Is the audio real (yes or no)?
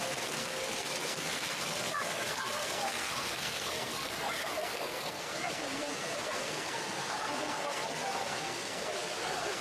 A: no